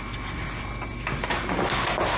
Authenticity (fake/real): real